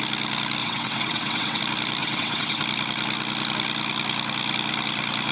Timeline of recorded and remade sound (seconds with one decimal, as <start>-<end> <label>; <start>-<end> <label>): 0.0-0.6 recorded; 0.6-1.6 remade; 1.6-2.0 recorded; 2.0-2.6 remade; 2.6-5.3 recorded